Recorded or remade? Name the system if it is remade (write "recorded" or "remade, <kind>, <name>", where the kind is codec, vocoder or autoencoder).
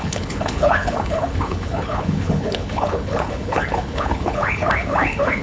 remade, codec, HILCodec